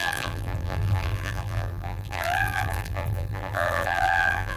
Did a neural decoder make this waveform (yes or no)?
yes